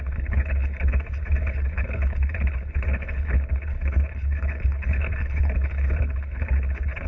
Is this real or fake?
fake